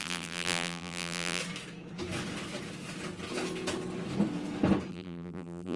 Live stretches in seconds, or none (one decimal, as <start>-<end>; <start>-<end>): 1.4-4.9